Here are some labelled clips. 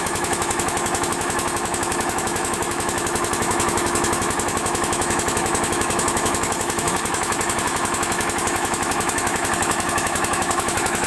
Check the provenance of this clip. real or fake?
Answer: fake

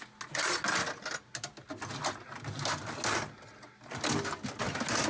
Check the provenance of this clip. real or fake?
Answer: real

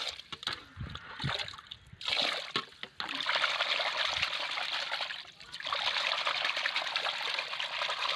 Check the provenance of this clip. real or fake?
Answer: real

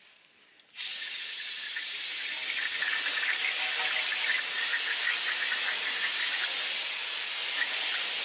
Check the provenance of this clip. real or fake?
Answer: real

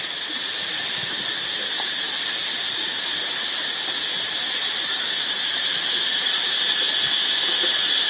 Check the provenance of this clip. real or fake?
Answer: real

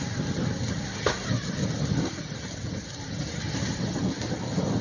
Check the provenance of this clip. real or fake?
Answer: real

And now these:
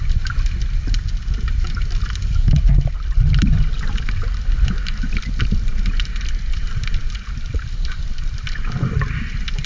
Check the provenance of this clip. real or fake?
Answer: real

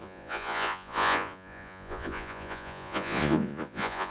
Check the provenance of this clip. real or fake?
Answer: fake